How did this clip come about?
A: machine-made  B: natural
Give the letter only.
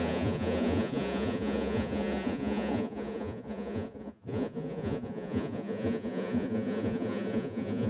A